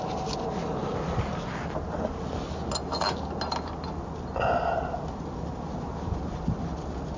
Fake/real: real